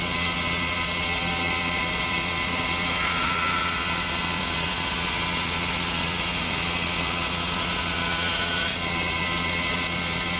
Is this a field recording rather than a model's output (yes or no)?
no